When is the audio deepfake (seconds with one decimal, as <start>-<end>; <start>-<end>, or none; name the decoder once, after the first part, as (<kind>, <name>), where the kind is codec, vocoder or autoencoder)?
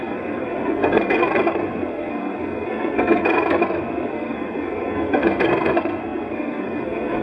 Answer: 0.0-7.2 (codec, SNAC)